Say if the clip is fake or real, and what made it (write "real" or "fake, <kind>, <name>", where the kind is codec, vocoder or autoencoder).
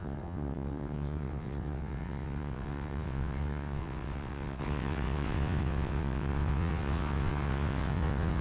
fake, vocoder, WaveNeXt